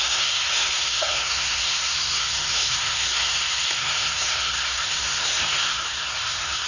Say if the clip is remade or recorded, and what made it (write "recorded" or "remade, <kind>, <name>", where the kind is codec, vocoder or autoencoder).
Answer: remade, codec, SNAC